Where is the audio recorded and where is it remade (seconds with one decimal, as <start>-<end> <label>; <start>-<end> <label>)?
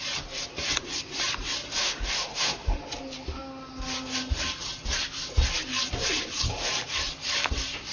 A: 0.0-1.8 recorded; 1.8-2.8 remade; 2.8-7.9 recorded